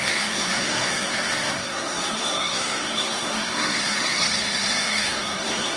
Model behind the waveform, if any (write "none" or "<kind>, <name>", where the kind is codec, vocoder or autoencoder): codec, SNAC